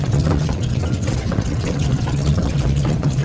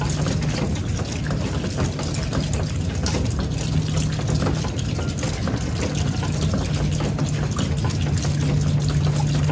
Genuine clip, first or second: second